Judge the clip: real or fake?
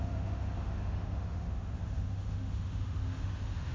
fake